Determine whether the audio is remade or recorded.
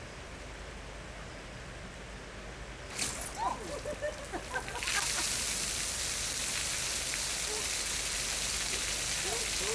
recorded